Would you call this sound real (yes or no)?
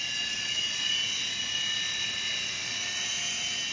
yes